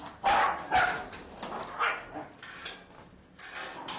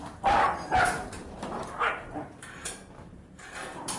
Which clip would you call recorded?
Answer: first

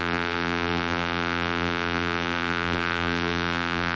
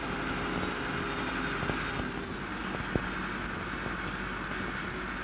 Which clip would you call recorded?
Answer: second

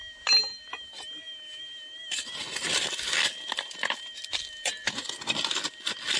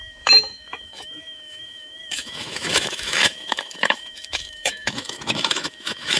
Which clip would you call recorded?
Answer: first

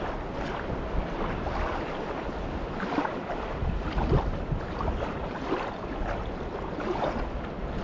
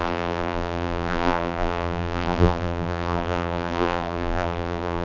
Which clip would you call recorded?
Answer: first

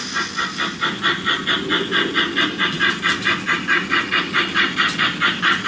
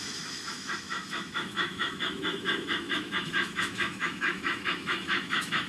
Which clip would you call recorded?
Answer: first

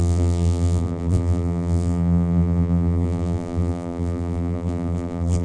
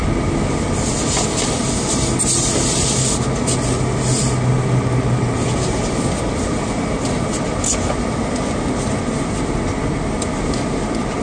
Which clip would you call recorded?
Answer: second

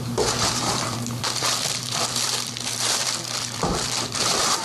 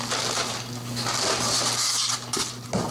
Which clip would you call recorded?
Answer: second